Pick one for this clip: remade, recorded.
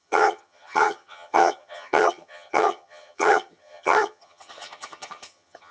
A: remade